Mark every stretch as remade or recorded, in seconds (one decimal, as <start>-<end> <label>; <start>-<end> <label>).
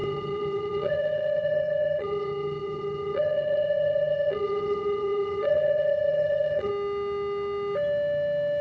0.0-6.7 remade; 6.7-8.6 recorded